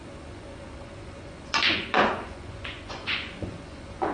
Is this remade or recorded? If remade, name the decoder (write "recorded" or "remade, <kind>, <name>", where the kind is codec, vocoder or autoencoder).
remade, vocoder, Vocos